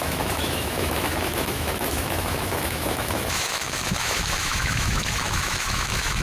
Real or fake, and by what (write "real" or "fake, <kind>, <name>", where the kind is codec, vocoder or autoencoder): fake, autoencoder, DAC-VAE